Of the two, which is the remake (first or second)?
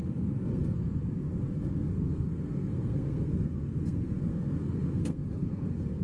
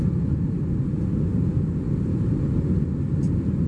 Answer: first